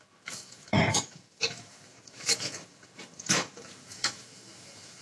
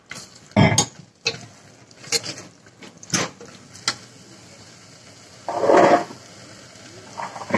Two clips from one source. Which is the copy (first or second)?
first